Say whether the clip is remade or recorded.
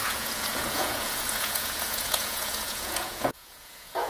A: remade